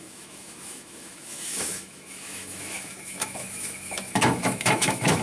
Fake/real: fake